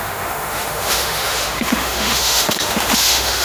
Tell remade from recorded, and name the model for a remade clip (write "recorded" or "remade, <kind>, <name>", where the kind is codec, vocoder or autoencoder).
remade, autoencoder, DAC-VAE